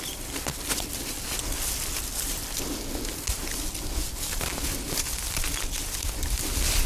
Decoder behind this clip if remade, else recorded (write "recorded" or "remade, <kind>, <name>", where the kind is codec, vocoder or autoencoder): recorded